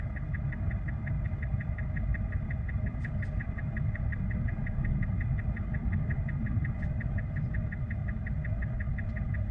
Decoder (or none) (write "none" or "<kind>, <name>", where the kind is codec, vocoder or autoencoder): none